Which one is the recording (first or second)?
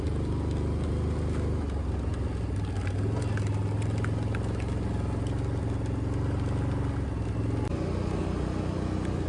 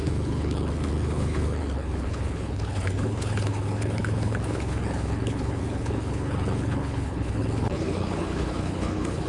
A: first